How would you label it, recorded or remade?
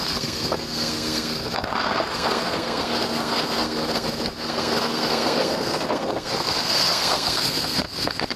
remade